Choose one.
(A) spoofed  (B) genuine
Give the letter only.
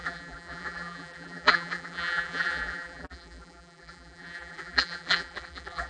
A